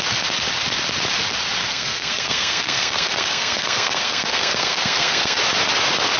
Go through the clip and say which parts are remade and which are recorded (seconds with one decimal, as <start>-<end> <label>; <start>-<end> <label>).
0.0-1.7 recorded; 1.7-5.4 remade; 5.4-6.2 recorded